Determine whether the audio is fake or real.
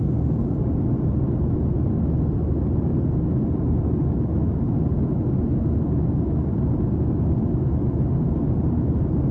real